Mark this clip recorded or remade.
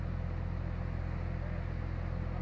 recorded